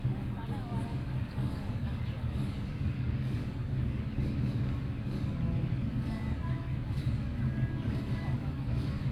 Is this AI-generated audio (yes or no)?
yes